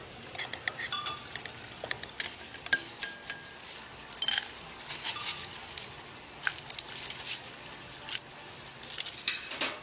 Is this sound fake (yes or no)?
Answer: no